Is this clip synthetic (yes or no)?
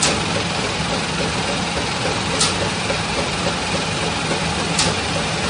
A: no